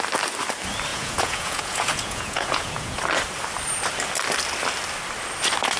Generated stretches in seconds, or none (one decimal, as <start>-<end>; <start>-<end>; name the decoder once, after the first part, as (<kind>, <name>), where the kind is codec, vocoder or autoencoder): 0.9-3.0 (vocoder, Vocos)